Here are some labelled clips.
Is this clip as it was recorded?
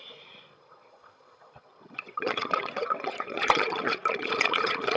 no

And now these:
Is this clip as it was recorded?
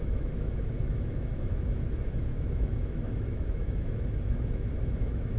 no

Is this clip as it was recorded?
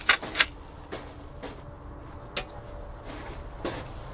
yes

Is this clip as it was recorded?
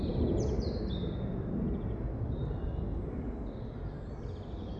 yes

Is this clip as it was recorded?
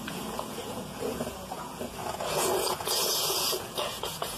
no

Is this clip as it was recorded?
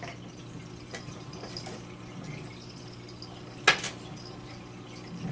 yes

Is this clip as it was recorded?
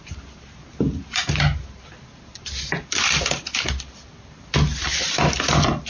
yes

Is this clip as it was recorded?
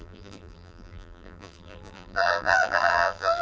no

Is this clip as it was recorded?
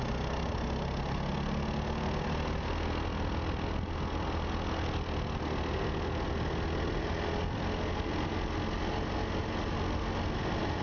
yes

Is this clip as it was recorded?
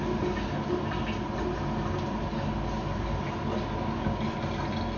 yes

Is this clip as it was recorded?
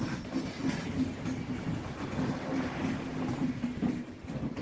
yes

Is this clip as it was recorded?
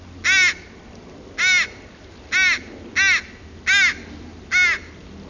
yes